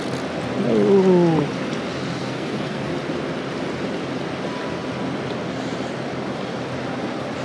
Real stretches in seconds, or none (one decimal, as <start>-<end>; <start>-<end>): 0.0-2.2; 2.9-7.4